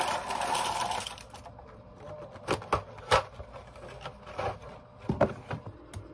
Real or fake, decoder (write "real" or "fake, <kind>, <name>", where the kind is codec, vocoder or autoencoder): real